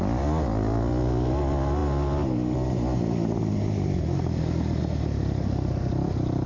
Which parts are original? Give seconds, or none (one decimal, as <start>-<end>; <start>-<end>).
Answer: 0.0-6.5